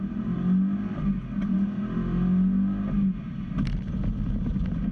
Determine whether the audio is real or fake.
real